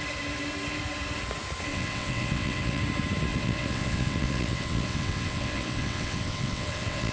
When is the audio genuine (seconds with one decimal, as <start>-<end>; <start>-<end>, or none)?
0.0-1.7; 2.8-3.3